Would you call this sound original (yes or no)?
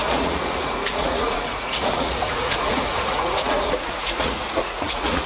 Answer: no